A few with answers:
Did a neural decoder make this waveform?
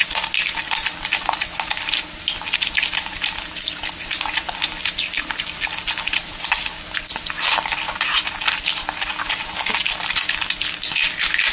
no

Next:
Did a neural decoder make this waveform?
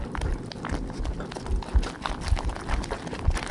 no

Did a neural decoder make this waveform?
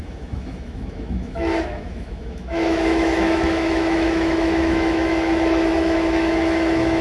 yes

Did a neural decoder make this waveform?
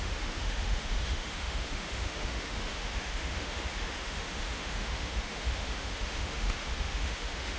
yes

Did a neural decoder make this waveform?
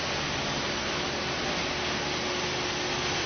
no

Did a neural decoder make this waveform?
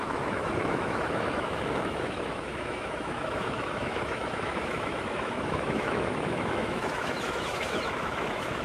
yes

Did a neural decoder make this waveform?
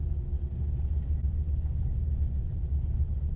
no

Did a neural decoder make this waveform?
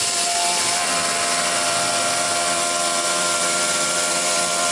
yes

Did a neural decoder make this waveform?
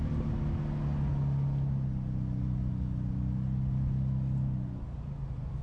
no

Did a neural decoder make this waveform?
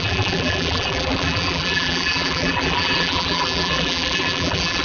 yes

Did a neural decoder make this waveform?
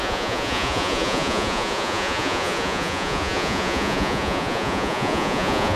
yes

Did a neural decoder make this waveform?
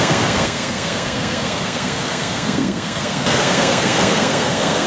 yes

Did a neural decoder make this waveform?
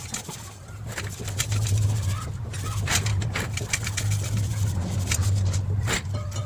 no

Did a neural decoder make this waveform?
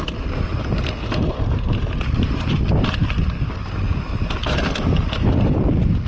no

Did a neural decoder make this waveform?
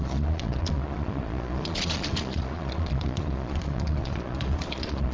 yes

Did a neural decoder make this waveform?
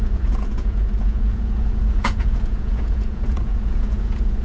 yes